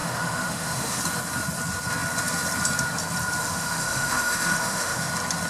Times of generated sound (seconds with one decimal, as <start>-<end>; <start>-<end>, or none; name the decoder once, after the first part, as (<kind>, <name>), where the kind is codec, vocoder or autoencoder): 0.0-1.0 (autoencoder, DAC-VAE); 3.4-5.1